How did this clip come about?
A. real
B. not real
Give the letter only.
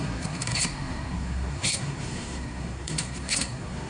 B